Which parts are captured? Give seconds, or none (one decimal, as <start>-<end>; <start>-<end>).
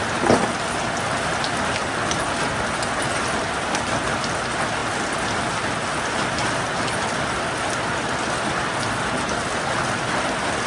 0.0-10.7